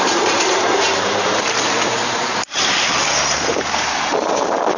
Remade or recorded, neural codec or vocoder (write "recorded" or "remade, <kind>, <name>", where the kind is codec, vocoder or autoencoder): remade, vocoder, BigVGAN v2